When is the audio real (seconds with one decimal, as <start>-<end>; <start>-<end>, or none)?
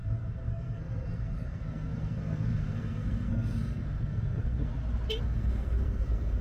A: 4.7-5.2